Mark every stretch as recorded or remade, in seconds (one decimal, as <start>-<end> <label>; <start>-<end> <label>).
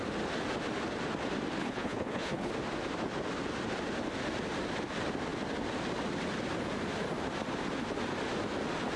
0.0-1.6 recorded; 1.6-2.5 remade; 2.5-9.0 recorded